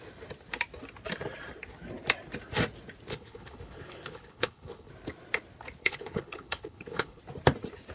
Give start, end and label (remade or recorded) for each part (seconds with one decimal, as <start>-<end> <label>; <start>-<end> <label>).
0.0-3.1 recorded; 3.1-4.9 remade; 4.9-5.8 recorded; 5.8-7.2 remade; 7.2-7.9 recorded

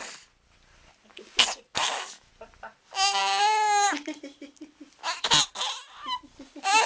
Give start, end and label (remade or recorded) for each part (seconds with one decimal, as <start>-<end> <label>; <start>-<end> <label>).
0.0-1.7 recorded; 1.7-2.3 remade; 2.3-6.9 recorded

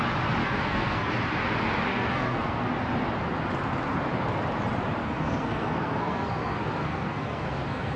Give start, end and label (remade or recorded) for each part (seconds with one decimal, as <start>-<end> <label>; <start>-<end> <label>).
0.0-0.4 recorded; 0.4-1.1 remade; 1.1-1.9 recorded; 1.9-2.7 remade; 2.7-5.0 recorded; 5.0-8.0 remade

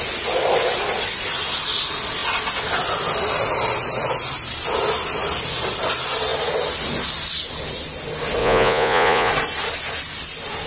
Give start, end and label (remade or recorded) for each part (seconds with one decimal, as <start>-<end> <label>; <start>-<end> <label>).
0.0-8.4 recorded; 8.4-9.3 remade; 9.3-10.7 recorded

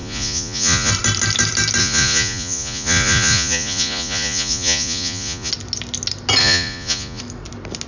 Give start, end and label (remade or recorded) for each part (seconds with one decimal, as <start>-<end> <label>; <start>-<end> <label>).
0.0-0.9 remade; 0.9-1.8 recorded; 1.8-5.5 remade; 5.5-6.4 recorded; 6.4-7.2 remade; 7.2-7.9 recorded

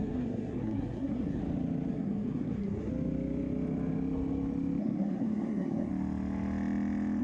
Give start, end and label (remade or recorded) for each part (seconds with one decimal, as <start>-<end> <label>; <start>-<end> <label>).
0.0-1.4 remade; 1.4-1.9 recorded; 1.9-2.9 remade; 2.9-4.8 recorded; 4.8-5.9 remade; 5.9-7.2 recorded

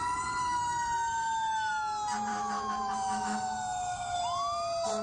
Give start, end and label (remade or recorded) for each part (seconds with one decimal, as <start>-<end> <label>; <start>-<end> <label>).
0.0-0.4 recorded; 0.4-1.7 remade; 1.7-2.3 recorded; 2.3-4.2 remade; 4.2-5.0 recorded